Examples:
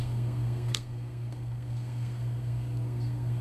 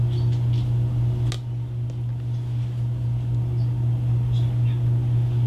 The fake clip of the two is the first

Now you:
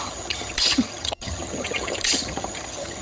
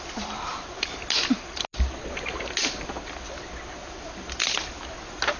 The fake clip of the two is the first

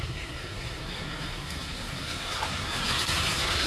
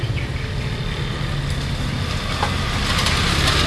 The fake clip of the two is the first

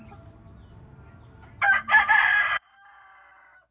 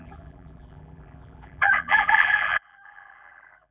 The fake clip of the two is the second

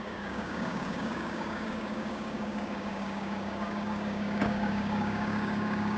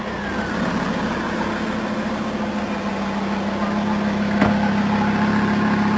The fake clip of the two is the first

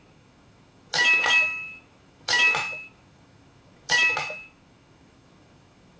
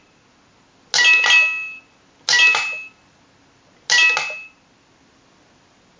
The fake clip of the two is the first